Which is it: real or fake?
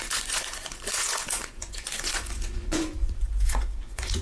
fake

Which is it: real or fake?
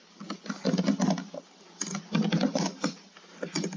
real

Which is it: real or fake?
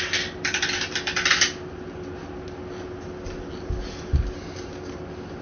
real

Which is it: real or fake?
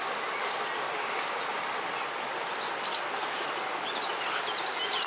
real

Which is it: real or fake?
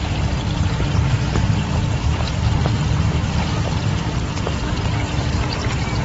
real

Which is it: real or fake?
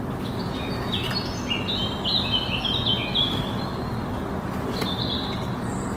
real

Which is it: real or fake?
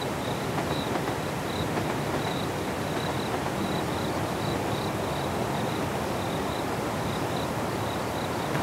real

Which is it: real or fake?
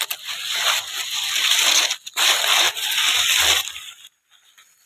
real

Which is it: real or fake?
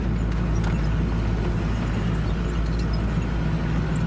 real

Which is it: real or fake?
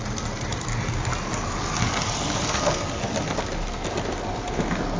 real